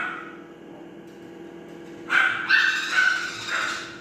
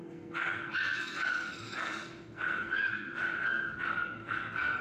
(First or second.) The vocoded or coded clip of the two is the second